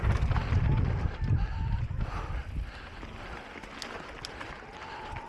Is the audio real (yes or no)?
yes